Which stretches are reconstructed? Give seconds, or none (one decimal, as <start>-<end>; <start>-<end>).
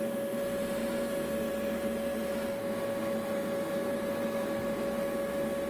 none